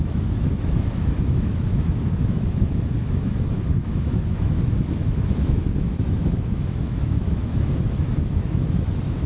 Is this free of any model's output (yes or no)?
no